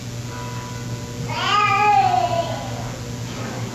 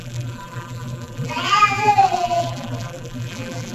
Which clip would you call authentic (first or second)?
first